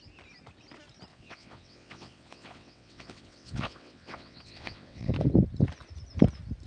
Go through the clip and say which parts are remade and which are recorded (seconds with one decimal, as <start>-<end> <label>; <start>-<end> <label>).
0.0-1.1 recorded; 1.1-5.1 remade; 5.1-6.7 recorded